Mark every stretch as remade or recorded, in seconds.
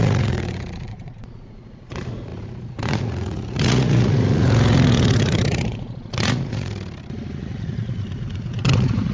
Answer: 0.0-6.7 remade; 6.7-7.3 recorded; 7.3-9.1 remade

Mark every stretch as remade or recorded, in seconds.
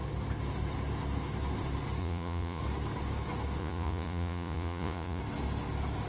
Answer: 0.0-2.0 recorded; 2.0-2.6 remade; 2.6-3.6 recorded; 3.6-5.2 remade; 5.2-6.1 recorded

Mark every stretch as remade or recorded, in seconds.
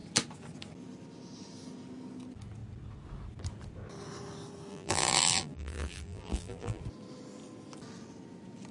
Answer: 0.0-4.7 recorded; 4.7-6.8 remade; 6.8-8.7 recorded